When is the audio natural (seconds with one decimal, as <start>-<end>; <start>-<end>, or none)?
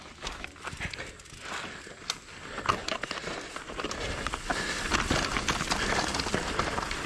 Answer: 0.0-2.8; 4.0-6.1